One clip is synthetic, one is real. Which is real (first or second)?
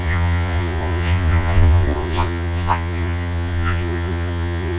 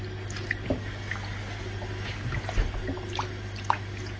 second